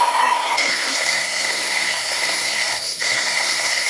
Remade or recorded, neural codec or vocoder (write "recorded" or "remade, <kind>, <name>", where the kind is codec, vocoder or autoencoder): remade, codec, SNAC